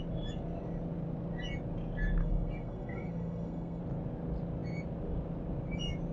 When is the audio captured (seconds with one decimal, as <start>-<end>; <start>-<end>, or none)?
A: 0.0-2.2; 3.8-6.1